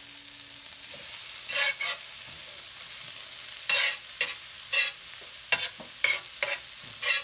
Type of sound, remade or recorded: recorded